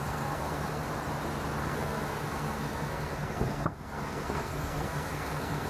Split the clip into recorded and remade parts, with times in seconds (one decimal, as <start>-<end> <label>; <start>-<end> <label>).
0.0-0.8 remade; 0.8-1.6 recorded; 1.6-5.7 remade